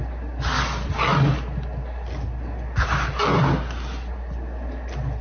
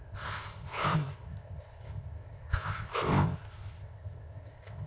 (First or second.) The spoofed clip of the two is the second